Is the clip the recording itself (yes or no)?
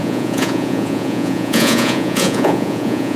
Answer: no